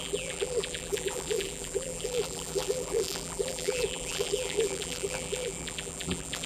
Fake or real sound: fake